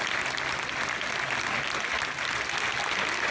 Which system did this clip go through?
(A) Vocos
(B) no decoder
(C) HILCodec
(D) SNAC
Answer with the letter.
B